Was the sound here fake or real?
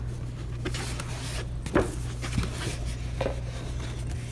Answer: real